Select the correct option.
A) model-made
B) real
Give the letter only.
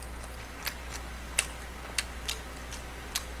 B